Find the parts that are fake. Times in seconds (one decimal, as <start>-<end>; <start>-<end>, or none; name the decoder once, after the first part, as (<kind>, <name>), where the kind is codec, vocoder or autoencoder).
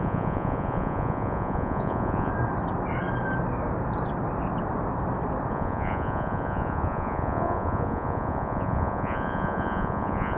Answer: 0.0-2.3 (vocoder, Vocos); 5.5-10.4